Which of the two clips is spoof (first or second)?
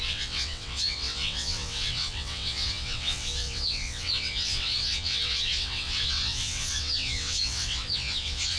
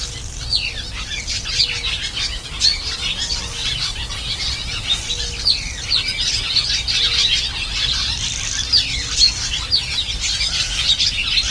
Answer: first